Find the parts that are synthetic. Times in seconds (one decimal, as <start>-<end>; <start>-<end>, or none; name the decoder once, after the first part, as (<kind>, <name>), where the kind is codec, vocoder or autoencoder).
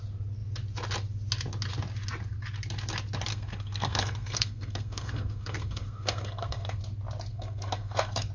3.3-6.8 (codec, SNAC); 7.3-8.3